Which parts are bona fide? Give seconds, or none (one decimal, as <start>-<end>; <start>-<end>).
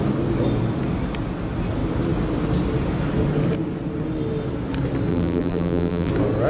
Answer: 0.0-5.1; 6.1-6.5